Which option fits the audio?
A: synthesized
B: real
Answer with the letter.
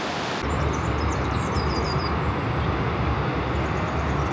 B